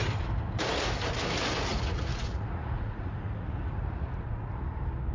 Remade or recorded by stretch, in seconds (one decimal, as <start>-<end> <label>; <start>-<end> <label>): 0.0-1.7 recorded; 1.7-4.6 remade; 4.6-5.1 recorded